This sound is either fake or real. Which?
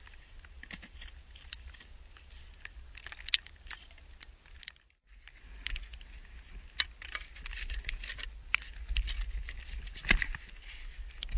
real